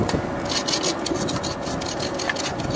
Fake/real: real